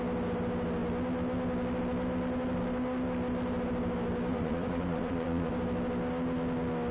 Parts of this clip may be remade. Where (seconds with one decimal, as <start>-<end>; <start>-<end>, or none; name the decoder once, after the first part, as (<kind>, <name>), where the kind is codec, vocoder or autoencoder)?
4.3-5.5 (vocoder, Vocos)